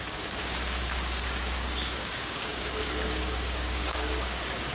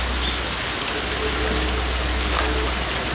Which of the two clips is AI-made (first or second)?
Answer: first